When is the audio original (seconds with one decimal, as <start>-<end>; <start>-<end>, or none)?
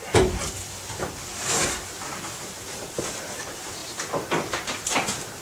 none